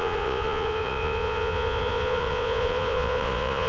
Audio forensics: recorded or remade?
remade